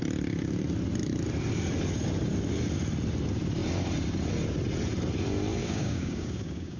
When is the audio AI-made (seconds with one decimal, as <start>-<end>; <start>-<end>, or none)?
5.6-6.8